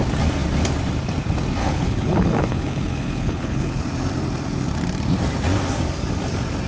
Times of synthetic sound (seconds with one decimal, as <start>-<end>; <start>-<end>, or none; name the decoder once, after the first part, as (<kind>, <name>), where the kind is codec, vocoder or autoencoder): 1.6-3.8 (codec, HILCodec)